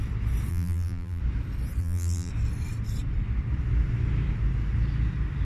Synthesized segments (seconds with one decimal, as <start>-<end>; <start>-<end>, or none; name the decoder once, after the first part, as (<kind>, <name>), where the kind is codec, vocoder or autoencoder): 0.5-1.2 (vocoder, BigVGAN v2); 1.8-2.3